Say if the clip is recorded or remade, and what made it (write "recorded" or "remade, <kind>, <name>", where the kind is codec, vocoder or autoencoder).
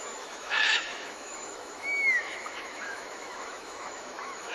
remade, autoencoder, DAC-VAE